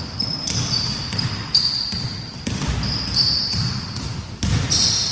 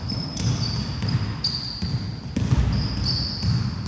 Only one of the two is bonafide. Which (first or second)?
second